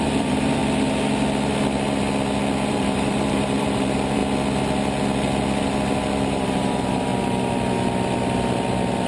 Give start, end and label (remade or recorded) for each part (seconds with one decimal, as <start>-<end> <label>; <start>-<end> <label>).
0.0-0.6 remade; 0.6-2.7 recorded; 2.7-4.2 remade; 4.2-6.3 recorded; 6.3-7.1 remade; 7.1-9.1 recorded